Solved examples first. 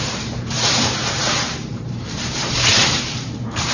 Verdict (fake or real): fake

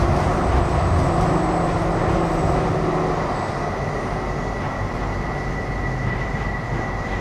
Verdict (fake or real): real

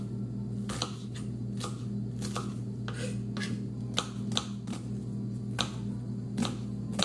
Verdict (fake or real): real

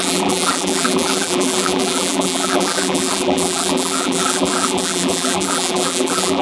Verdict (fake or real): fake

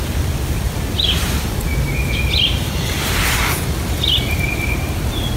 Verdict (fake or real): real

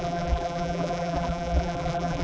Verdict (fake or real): fake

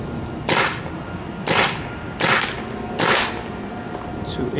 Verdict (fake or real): real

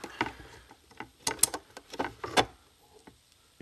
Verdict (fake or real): real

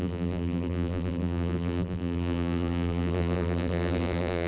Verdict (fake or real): fake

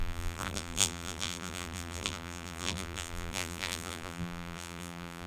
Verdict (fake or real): fake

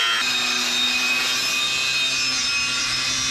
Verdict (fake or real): real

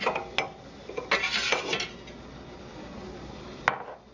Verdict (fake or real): real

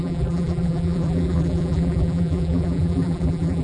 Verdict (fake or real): fake